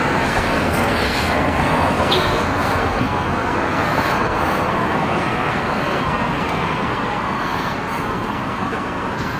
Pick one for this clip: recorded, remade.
remade